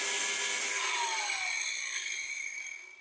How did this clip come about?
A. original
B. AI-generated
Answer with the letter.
A